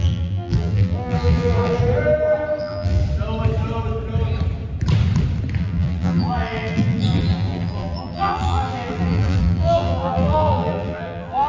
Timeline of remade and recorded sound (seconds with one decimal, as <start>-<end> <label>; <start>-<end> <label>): 0.0-1.8 remade; 1.8-2.6 recorded; 2.6-3.0 remade; 3.0-5.6 recorded; 5.6-11.5 remade